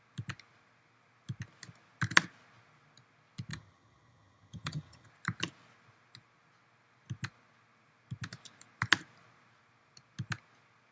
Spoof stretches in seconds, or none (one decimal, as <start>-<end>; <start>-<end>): 3.5-5.1